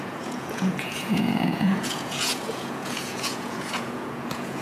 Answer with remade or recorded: remade